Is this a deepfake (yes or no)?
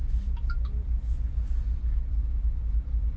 no